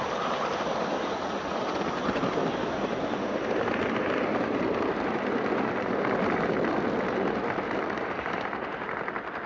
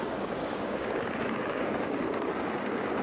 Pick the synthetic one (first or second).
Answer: second